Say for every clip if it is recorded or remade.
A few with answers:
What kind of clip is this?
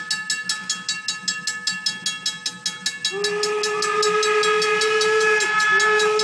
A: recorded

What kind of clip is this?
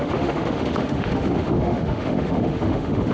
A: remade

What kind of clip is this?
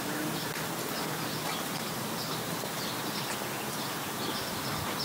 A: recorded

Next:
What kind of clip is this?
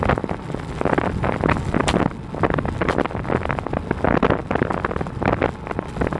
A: recorded